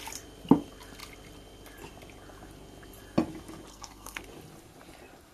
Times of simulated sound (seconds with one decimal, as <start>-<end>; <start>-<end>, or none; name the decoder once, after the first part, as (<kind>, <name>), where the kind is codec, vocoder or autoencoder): 3.7-4.2 (codec, SNAC)